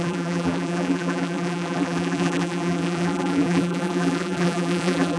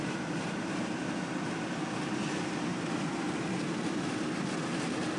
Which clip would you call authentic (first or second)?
second